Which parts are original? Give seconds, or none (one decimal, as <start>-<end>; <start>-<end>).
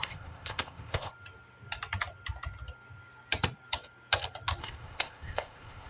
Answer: 1.1-4.6